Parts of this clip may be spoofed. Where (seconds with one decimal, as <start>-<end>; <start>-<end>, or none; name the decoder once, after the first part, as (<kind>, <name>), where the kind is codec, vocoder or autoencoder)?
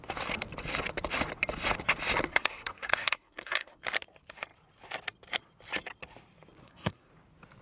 2.3-3.8 (codec, SNAC); 6.6-7.1